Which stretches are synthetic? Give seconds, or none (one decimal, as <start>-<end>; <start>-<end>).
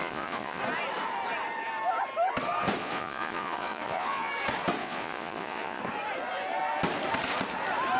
0.0-0.6; 2.8-4.3; 4.8-5.8